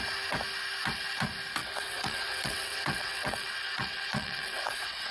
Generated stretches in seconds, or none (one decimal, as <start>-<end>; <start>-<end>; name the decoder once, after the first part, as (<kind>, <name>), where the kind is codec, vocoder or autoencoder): 1.6-5.1 (vocoder, WaveNeXt)